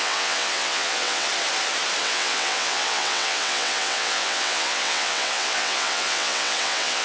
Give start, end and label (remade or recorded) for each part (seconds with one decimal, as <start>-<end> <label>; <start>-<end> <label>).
0.0-1.3 remade; 1.3-2.0 recorded; 2.0-7.0 remade